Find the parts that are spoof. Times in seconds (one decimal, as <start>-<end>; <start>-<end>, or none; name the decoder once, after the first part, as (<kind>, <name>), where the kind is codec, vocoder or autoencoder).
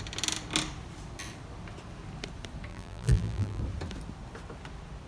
2.7-3.6 (vocoder, BigVGAN v2)